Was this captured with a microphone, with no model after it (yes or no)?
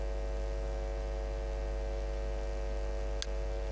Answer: yes